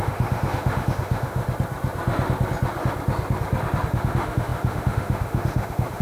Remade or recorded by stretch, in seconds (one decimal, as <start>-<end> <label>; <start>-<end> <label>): 0.0-1.4 remade; 1.4-3.9 recorded; 3.9-6.0 remade